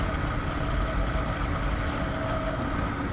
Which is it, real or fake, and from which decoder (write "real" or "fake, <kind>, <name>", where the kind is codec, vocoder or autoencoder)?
real